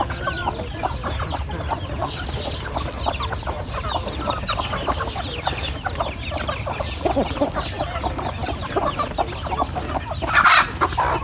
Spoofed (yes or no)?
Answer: no